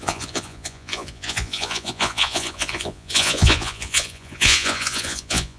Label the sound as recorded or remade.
remade